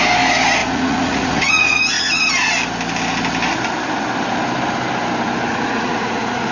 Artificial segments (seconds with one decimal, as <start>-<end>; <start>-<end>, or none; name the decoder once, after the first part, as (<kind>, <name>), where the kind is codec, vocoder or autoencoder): 0.6-2.1 (vocoder, Vocos); 5.5-6.5